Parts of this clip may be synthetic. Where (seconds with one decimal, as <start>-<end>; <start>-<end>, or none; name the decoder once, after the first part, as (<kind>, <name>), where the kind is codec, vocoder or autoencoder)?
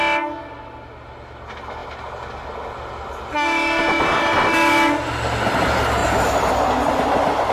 none